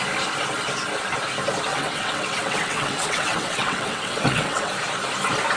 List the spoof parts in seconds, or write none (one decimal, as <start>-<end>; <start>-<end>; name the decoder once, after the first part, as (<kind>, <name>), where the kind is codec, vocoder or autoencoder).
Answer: 1.7-4.7 (vocoder, WaveNeXt)